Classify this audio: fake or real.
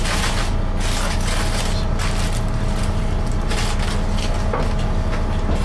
real